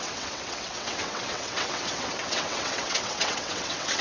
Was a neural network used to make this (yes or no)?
yes